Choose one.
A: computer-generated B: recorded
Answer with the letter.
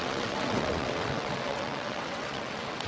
A